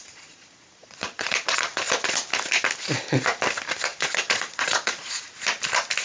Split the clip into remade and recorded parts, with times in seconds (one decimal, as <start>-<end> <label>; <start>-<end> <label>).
0.0-1.8 remade; 1.8-3.9 recorded; 3.9-5.3 remade; 5.3-6.0 recorded